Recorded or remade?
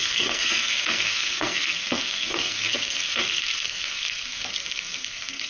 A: remade